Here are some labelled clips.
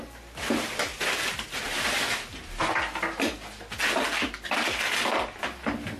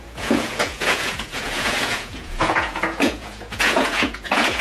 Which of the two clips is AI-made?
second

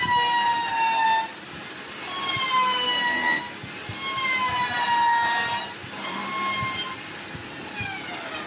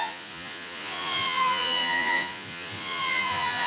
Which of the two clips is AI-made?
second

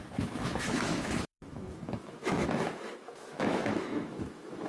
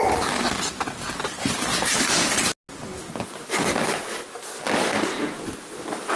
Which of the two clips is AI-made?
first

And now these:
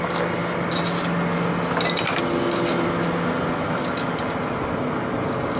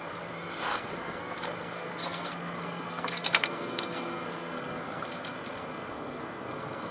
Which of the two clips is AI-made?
second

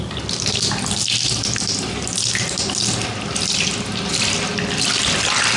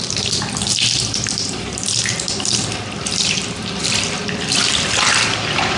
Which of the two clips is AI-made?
second